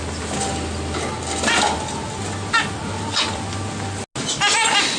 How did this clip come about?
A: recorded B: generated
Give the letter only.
A